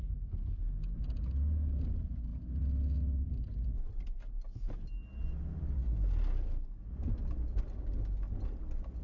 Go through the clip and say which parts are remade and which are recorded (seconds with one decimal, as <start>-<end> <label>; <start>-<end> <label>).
0.0-9.0 recorded

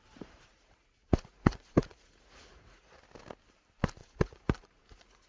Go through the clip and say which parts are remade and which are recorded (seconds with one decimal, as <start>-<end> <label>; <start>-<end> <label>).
0.0-0.5 recorded; 0.5-3.0 remade; 3.0-4.0 recorded; 4.0-5.3 remade

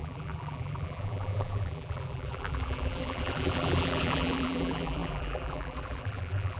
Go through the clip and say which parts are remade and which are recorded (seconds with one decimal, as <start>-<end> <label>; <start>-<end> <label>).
0.0-6.6 remade